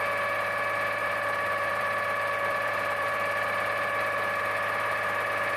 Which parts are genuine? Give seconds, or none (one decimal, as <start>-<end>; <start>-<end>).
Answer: 0.0-1.0; 4.4-5.6